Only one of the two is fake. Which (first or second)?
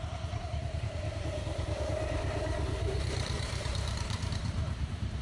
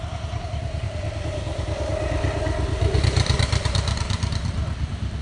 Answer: first